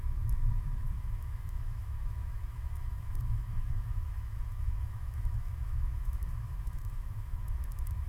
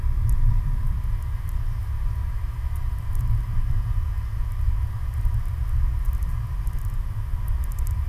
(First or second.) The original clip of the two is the second